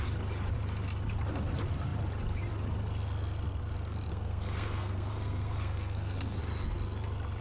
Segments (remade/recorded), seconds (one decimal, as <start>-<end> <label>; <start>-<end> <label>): 0.0-4.1 recorded; 4.1-6.4 remade; 6.4-7.4 recorded